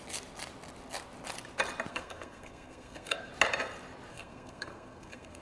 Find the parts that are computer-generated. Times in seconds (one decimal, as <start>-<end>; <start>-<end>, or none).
1.9-3.3; 4.1-5.4